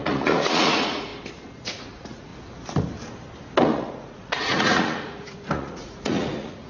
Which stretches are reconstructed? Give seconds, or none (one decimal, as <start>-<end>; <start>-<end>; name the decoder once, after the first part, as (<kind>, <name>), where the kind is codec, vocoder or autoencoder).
0.0-1.1 (vocoder, Vocos); 1.6-2.3; 3.6-6.7